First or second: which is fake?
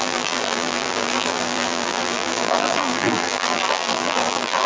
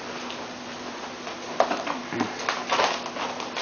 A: first